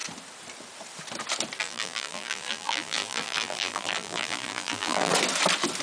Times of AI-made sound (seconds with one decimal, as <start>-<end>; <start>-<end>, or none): 1.6-5.1